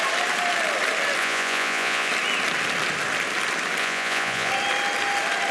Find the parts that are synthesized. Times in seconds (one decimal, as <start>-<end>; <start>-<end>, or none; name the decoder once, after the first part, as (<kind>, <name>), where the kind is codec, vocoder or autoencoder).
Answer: 1.2-2.1 (vocoder, Vocos); 3.8-4.5